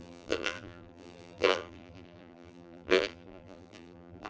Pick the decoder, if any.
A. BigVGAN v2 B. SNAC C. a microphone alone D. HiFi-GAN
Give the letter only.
A